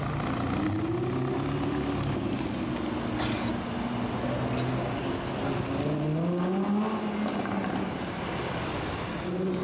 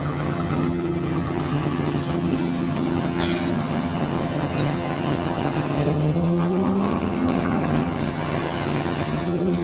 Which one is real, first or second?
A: first